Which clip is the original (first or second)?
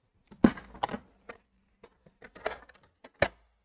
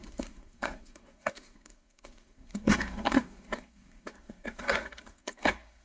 first